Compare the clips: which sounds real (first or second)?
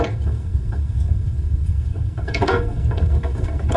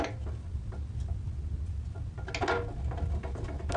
second